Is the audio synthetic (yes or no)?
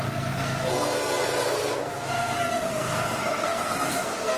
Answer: yes